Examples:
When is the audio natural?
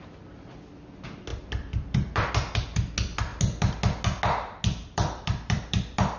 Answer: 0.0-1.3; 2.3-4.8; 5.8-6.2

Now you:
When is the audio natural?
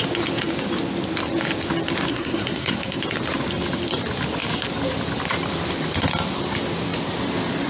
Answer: 0.0-2.1; 3.0-7.7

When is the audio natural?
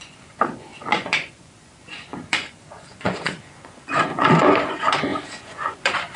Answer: none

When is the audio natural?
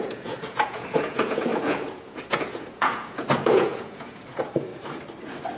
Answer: 4.7-5.6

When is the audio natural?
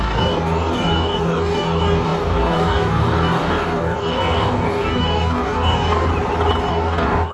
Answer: 6.1-6.7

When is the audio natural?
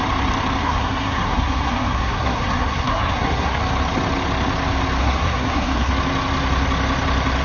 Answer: 0.0-0.6; 3.6-5.0; 5.9-7.4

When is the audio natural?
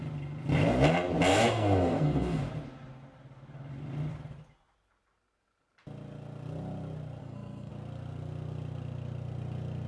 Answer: 0.0-1.3; 2.4-7.2; 7.7-9.9